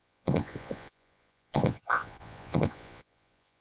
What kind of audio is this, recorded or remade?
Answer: remade